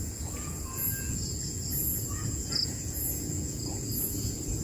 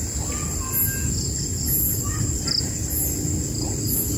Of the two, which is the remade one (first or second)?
first